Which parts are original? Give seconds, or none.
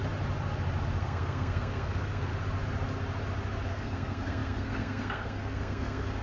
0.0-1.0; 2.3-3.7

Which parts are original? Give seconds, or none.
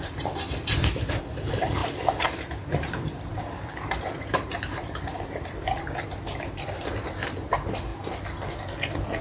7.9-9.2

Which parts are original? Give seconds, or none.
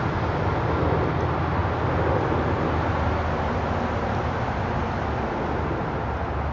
0.0-6.5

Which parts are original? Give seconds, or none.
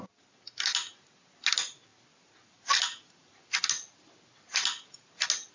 0.0-5.5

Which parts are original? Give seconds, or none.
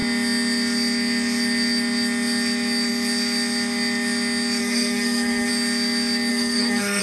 0.0-4.6; 5.5-6.3